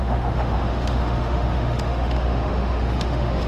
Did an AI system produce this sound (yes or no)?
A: yes